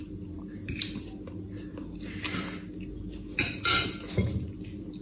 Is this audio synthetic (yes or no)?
no